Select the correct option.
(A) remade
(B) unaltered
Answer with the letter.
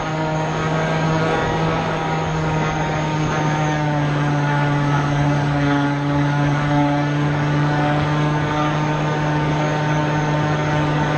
A